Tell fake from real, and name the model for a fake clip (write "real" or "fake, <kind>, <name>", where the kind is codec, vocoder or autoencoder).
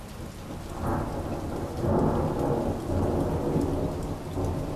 real